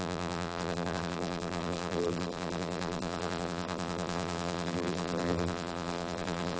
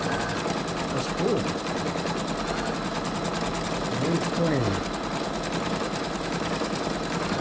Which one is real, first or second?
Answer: second